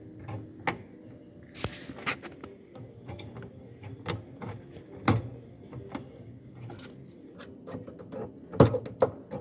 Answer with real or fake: real